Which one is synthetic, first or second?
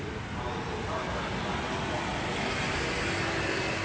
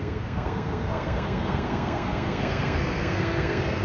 second